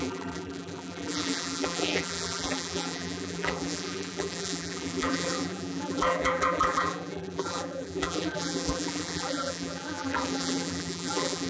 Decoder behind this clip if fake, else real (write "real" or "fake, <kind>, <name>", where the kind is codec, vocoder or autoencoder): fake, vocoder, BigVGAN v2